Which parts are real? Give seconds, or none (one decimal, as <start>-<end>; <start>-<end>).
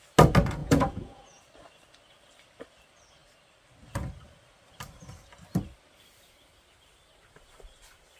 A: 0.0-0.6; 1.4-8.2